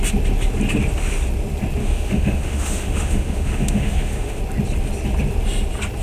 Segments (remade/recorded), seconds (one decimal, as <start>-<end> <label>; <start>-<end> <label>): 0.0-1.8 recorded; 1.8-4.4 remade; 4.4-6.0 recorded